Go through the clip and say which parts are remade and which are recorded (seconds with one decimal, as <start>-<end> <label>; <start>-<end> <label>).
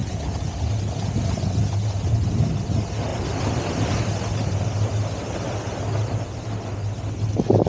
0.0-3.1 recorded; 3.1-4.2 remade; 4.2-7.7 recorded